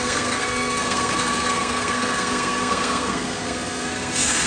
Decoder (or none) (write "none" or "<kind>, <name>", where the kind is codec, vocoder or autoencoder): codec, SNAC